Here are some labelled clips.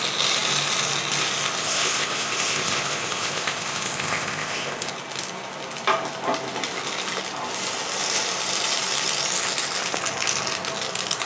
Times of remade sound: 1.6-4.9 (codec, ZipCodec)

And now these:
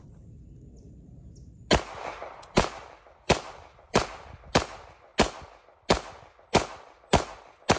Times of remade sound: 2.2-4.0 (vocoder, BigVGAN v2)

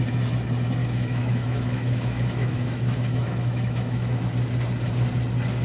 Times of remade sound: 0.8-4.2 (autoencoder, DAC-VAE)

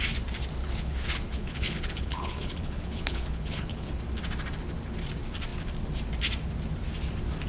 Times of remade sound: 0.6-4.0 (codec, HILCodec)